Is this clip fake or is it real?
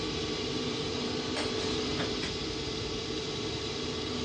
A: fake